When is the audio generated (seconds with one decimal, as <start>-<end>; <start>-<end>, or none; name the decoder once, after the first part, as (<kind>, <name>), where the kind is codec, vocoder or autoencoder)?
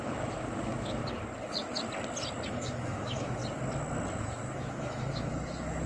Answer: 0.0-1.0 (autoencoder, DAC-VAE); 2.5-3.4; 4.2-5.9